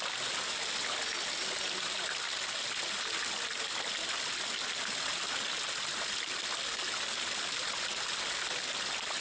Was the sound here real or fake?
real